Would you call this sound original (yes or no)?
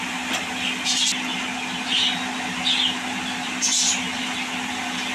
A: yes